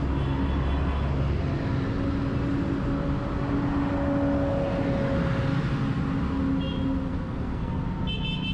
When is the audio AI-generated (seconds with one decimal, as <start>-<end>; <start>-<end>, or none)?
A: 7.1-7.8